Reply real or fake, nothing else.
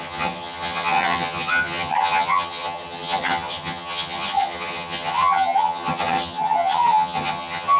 fake